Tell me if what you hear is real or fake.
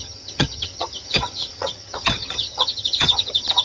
fake